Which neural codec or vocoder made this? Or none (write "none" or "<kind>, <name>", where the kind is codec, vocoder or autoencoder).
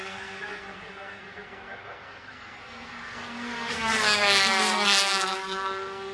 codec, SNAC